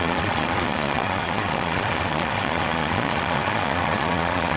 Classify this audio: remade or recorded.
remade